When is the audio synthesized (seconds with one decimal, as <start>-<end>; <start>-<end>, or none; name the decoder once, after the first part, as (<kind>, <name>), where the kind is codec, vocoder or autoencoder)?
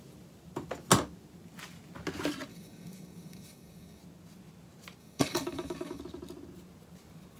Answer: 2.5-4.0 (codec, DAC); 5.0-6.0